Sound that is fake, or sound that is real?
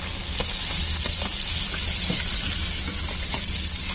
real